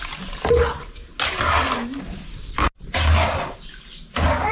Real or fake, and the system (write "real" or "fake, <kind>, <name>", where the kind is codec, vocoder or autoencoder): real